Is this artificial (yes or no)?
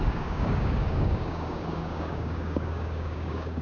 yes